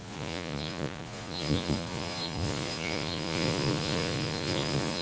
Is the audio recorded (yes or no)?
no